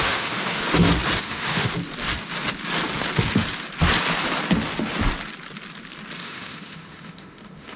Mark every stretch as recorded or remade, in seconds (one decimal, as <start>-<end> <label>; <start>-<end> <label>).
0.0-0.6 remade; 0.6-1.2 recorded; 1.2-1.7 remade; 1.7-6.2 recorded; 6.2-7.8 remade